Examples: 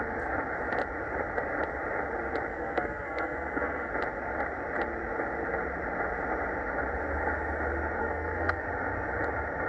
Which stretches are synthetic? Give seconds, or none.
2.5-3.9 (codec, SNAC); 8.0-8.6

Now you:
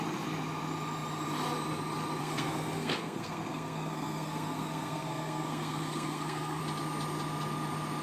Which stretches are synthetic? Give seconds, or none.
2.2-6.6 (codec, SNAC)

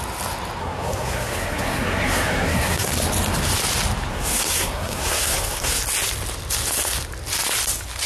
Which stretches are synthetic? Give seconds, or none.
0.6-2.9 (codec, SNAC); 4.1-5.8

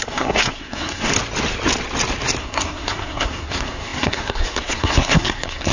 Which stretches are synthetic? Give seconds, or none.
0.0-1.1 (codec, SNAC); 2.4-5.7

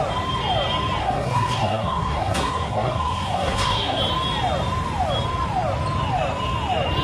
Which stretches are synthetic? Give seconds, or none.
1.0-4.0 (codec, SNAC)

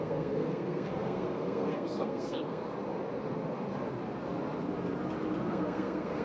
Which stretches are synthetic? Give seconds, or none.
0.0-2.6 (codec, SNAC); 5.5-6.2

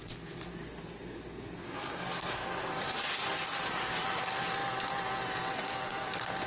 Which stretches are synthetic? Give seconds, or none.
0.0-2.7 (codec, SNAC)